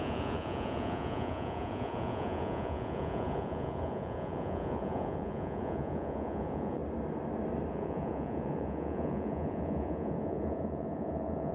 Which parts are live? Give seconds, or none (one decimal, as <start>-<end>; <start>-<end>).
6.8-7.7